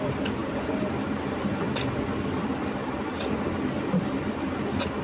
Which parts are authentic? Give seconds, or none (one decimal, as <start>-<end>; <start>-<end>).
0.0-5.0